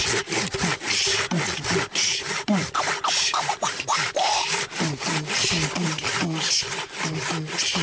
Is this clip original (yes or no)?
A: yes